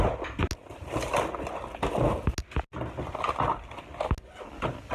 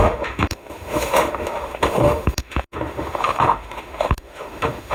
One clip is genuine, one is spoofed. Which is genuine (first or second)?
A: first